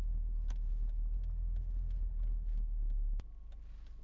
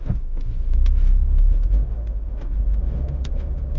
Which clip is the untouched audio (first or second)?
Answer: first